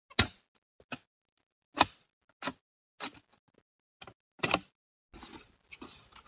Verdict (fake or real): real